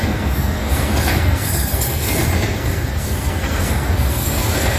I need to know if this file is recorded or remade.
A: remade